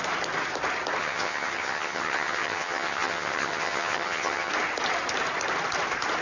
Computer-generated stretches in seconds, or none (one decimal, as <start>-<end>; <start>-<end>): 1.0-4.5

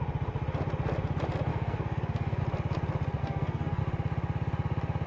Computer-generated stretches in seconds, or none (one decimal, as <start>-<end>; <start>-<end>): 1.5-2.4; 3.2-3.8